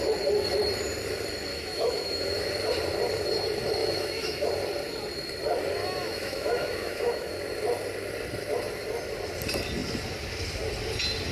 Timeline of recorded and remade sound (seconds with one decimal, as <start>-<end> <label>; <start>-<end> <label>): 0.0-1.5 recorded; 1.5-2.5 remade; 2.5-3.8 recorded; 3.8-4.5 remade; 4.5-5.8 recorded; 5.8-7.3 remade; 7.3-11.3 recorded